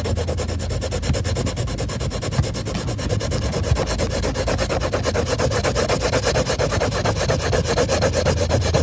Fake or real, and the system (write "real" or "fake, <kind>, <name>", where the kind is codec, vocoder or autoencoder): real